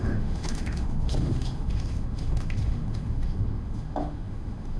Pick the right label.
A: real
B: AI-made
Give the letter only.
B